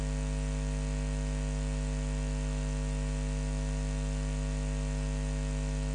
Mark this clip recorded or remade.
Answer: recorded